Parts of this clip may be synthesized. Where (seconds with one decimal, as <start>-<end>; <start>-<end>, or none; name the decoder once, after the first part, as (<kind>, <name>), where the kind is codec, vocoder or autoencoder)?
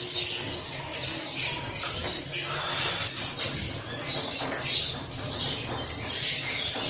none